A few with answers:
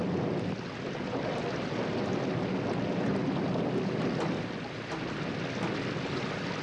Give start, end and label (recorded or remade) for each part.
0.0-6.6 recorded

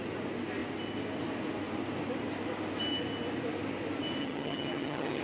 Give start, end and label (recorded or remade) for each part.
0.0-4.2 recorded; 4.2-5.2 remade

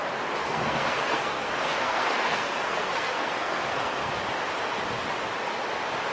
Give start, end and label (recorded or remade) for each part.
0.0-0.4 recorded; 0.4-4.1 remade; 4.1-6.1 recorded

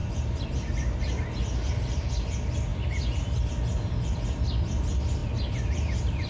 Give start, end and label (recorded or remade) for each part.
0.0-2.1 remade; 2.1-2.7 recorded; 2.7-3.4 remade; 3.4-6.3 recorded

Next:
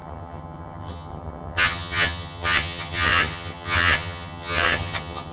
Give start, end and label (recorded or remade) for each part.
0.0-5.3 remade

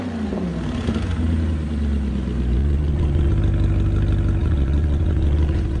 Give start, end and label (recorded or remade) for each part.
0.0-2.6 recorded; 2.6-3.3 remade; 3.3-4.4 recorded; 4.4-5.8 remade

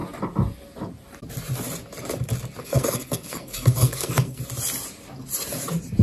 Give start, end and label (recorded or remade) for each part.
0.0-2.6 recorded; 2.6-4.4 remade; 4.4-6.0 recorded

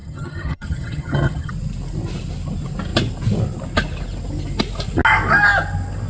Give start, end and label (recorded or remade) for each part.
0.0-1.5 remade; 1.5-6.1 recorded